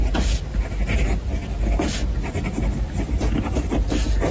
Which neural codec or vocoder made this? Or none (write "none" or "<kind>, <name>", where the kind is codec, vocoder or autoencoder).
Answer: none